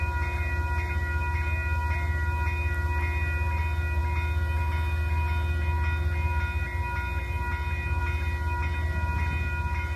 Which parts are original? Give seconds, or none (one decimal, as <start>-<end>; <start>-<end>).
0.0-10.0